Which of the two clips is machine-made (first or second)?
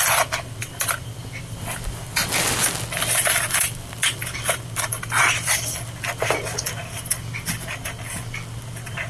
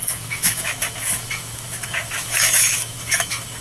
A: second